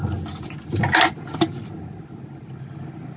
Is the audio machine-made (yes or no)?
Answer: no